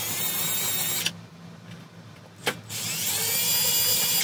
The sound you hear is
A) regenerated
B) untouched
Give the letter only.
B